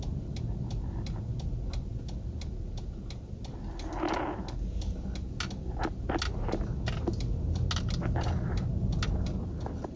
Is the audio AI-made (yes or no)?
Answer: no